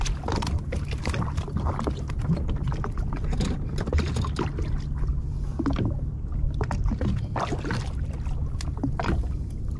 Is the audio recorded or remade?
recorded